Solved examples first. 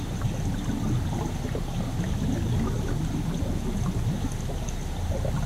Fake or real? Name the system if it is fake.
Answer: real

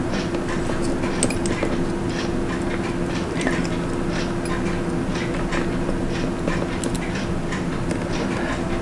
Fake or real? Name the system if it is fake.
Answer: real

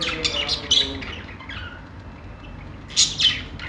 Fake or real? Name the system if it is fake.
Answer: real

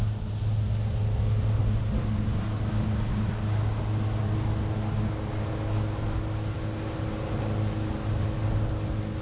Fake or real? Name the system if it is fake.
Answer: real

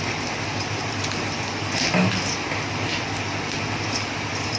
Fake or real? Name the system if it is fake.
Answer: real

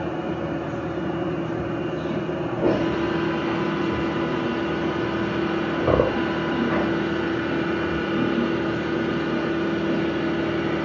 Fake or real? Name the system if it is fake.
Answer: real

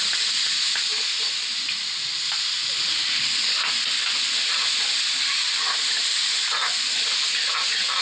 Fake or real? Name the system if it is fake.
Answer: real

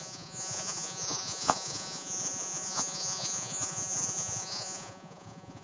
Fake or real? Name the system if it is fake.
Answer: fake, vocoder, Vocos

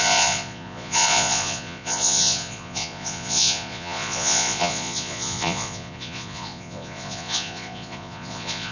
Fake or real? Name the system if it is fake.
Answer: fake, vocoder, Vocos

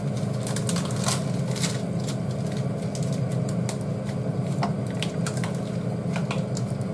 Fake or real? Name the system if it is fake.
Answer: real